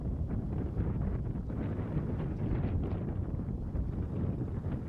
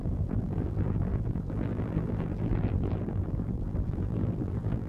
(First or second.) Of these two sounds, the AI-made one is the second